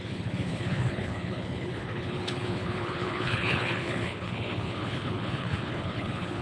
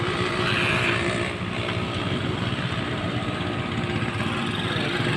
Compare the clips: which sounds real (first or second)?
second